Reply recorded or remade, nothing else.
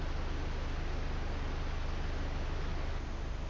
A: recorded